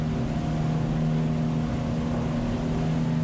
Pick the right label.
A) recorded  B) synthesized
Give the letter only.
A